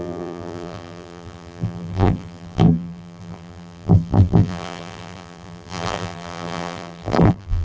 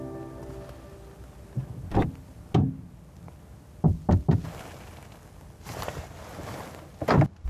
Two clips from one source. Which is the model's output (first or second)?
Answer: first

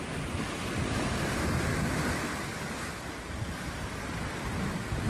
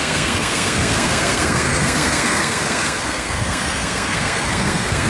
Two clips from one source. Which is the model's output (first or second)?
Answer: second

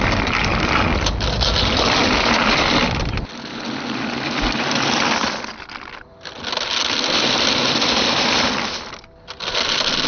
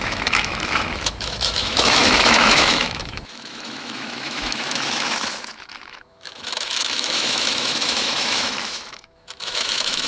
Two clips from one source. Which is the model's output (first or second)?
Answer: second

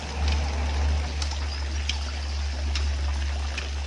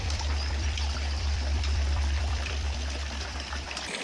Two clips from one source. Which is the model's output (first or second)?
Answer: second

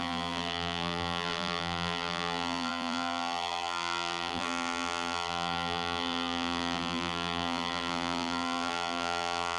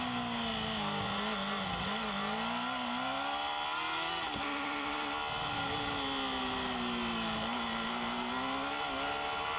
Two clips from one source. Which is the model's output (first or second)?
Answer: first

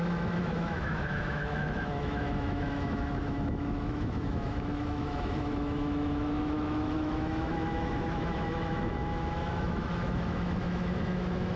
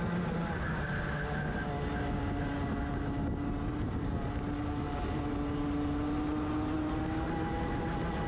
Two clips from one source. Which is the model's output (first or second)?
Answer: first